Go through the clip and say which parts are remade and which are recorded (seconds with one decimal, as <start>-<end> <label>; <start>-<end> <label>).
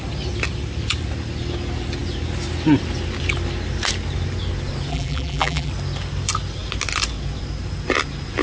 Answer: 0.0-4.9 recorded; 4.9-5.7 remade; 5.7-8.4 recorded